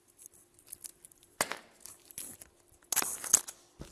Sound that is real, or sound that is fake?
real